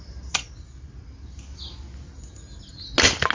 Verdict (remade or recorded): recorded